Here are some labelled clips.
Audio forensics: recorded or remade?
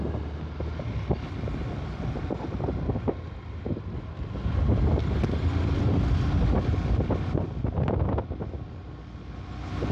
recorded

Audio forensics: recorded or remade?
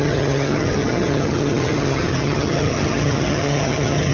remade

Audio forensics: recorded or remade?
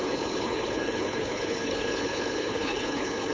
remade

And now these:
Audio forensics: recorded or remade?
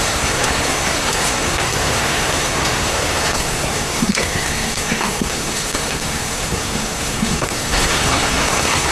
remade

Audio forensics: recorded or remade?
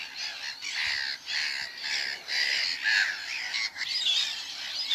recorded